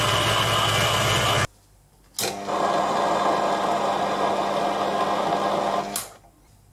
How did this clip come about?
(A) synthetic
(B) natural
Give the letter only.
B